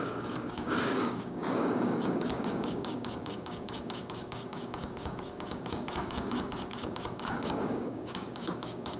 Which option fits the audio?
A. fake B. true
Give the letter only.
A